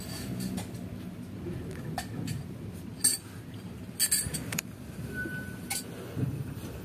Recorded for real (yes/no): yes